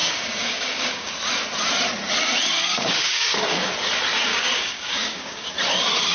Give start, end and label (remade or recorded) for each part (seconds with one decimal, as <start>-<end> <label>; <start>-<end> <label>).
0.0-1.1 remade; 1.1-2.6 recorded; 2.6-3.7 remade; 3.7-4.3 recorded; 4.3-5.5 remade; 5.5-6.1 recorded